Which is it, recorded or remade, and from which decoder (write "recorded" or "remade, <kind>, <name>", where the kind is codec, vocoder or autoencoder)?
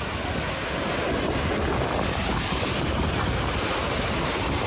recorded